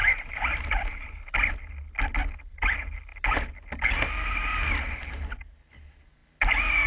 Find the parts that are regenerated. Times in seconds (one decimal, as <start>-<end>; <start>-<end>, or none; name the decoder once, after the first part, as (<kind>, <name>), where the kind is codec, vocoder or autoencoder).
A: none